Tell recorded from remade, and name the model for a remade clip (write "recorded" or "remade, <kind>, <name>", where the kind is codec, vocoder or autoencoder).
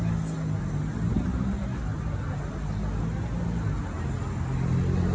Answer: recorded